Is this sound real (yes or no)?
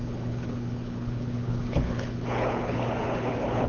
no